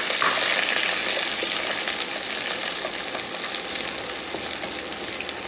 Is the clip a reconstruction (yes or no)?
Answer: no